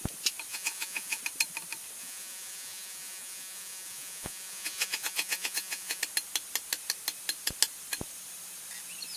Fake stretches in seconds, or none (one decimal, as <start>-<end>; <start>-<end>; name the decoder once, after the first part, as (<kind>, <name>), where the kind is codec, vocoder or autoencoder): 0.5-1.2 (vocoder, Vocos); 2.0-6.0